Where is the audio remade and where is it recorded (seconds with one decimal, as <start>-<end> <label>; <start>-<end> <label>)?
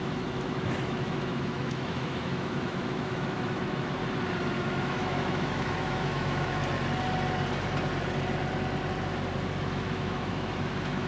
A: 0.0-4.0 remade; 4.0-4.6 recorded; 4.6-6.6 remade; 6.6-9.6 recorded; 9.6-11.1 remade